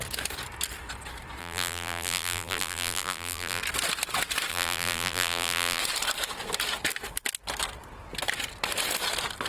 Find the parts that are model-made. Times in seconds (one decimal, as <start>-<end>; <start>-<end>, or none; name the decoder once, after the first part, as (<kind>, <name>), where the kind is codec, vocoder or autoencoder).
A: 1.4-3.6 (vocoder, BigVGAN v2); 4.5-5.8